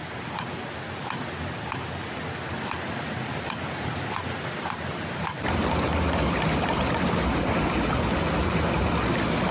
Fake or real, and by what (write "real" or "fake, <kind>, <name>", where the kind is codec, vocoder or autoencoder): real